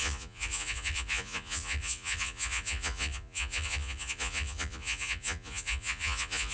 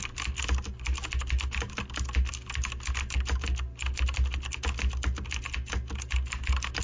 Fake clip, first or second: first